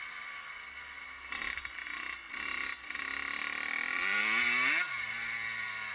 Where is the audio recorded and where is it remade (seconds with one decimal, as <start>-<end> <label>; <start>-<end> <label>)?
0.0-5.9 recorded